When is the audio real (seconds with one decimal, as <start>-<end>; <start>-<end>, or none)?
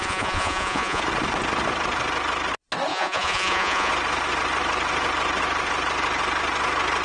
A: 1.0-2.9; 3.9-7.0